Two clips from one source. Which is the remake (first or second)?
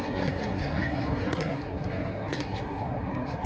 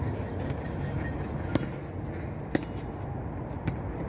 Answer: first